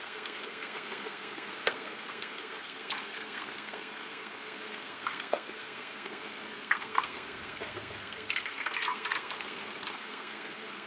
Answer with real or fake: fake